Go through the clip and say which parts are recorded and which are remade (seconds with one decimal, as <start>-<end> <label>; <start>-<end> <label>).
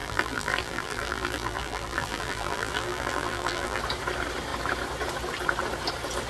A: 0.0-3.8 remade; 3.8-6.3 recorded